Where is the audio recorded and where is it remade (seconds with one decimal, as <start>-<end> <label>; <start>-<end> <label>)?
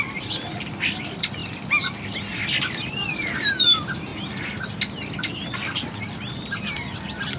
0.0-4.1 remade; 4.1-5.2 recorded; 5.2-7.4 remade